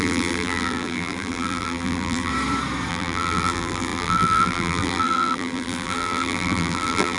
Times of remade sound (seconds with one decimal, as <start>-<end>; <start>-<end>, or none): 0.0-2.3; 2.9-7.2